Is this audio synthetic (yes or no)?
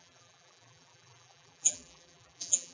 yes